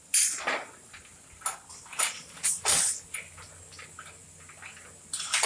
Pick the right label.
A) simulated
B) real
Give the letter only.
B